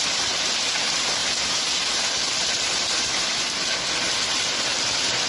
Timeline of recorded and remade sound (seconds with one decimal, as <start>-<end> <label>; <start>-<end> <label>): 0.0-5.3 recorded